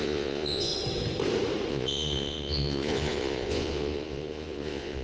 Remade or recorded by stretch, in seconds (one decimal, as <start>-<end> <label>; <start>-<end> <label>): 0.0-0.7 remade; 0.7-1.7 recorded; 1.7-5.0 remade